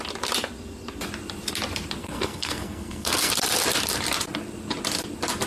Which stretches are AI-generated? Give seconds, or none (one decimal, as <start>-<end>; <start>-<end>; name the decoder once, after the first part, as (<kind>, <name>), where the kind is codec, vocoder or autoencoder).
2.0-3.3 (codec, SNAC)